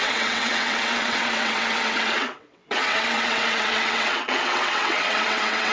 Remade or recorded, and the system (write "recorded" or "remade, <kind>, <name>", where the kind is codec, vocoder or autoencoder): remade, vocoder, WaveNeXt